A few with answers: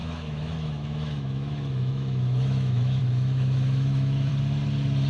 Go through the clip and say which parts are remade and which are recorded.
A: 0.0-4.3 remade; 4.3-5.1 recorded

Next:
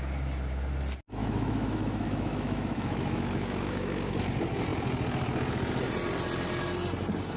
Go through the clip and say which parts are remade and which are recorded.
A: 0.0-1.2 recorded; 1.2-4.1 remade; 4.1-7.4 recorded

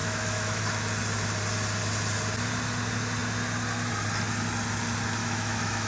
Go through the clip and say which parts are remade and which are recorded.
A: 0.0-0.6 remade; 0.6-5.2 recorded; 5.2-5.9 remade

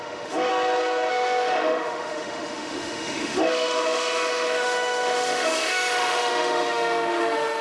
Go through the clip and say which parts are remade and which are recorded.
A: 0.0-0.5 remade; 0.5-1.1 recorded; 1.1-7.6 remade

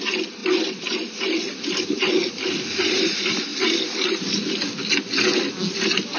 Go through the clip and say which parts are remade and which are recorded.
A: 0.0-6.2 recorded